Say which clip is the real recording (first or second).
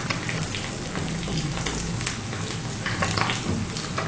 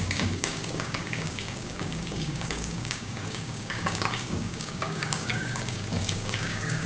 first